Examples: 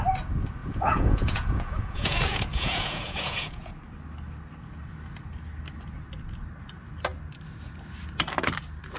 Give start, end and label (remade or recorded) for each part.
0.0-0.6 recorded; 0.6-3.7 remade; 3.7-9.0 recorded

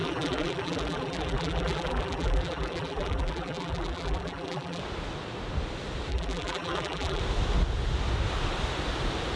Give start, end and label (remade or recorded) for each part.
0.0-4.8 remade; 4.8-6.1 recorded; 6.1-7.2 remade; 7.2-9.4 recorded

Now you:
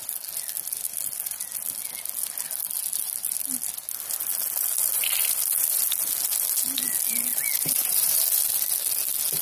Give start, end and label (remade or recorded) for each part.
0.0-4.8 recorded; 4.8-6.1 remade; 6.1-7.3 recorded; 7.3-8.7 remade; 8.7-9.4 recorded